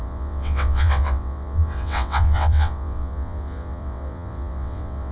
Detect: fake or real fake